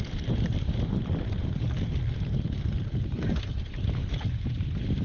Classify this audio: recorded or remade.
recorded